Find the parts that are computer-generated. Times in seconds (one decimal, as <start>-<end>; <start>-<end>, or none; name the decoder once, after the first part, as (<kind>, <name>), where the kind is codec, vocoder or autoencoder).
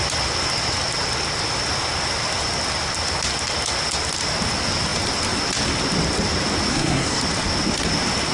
6.7-7.2 (codec, SNAC)